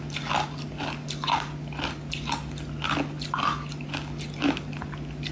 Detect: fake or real real